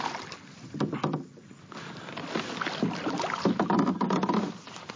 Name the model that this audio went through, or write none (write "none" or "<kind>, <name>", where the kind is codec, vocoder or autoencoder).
none